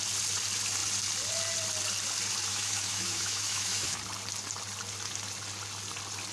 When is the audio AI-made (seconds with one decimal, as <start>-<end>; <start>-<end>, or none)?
2.5-4.0